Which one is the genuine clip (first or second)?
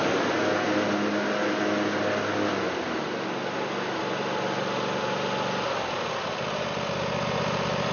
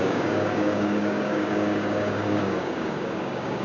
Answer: first